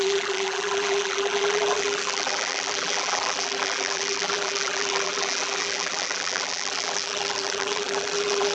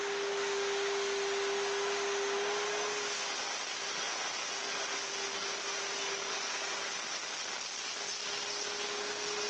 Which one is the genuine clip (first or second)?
second